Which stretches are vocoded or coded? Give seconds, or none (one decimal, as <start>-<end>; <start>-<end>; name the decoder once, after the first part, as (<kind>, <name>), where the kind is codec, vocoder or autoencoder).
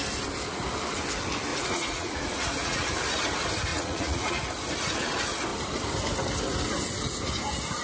1.5-2.9 (vocoder, Vocos); 3.7-4.4